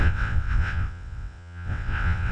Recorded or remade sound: remade